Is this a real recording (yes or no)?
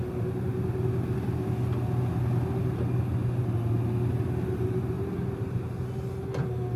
yes